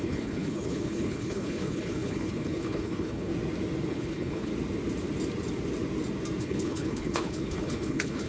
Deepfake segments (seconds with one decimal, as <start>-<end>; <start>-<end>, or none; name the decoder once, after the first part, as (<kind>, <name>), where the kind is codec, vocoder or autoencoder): 0.0-3.3 (codec, HILCodec); 3.9-4.5; 6.4-8.3

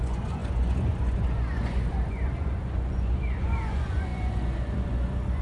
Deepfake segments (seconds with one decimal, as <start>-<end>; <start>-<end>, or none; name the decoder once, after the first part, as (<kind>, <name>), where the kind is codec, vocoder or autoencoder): 0.0-5.4 (vocoder, Vocos)